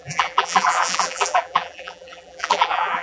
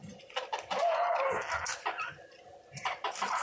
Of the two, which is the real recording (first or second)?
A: second